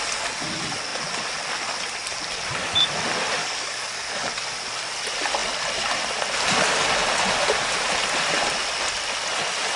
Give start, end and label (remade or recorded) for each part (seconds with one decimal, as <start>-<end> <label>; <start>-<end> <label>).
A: 0.0-3.4 recorded; 3.4-4.3 remade; 4.3-9.8 recorded